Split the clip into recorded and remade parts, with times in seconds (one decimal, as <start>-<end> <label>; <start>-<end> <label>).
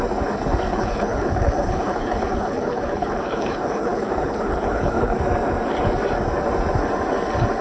0.0-0.7 recorded; 0.7-5.2 remade; 5.2-7.6 recorded